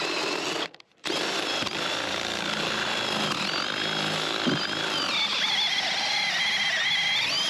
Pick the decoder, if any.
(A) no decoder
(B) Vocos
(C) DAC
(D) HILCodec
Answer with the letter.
A